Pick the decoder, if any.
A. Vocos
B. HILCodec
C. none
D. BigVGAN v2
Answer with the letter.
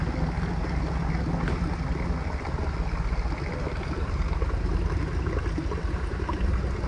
C